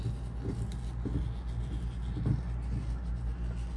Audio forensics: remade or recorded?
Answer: recorded